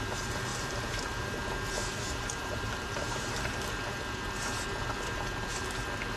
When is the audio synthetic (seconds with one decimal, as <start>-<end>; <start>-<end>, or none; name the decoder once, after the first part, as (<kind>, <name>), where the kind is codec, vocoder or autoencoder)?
0.5-1.4 (vocoder, BigVGAN v2); 1.9-3.7